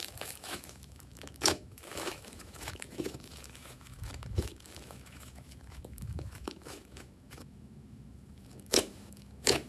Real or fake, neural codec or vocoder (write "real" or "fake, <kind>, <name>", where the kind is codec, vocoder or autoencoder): fake, autoencoder, DAC-VAE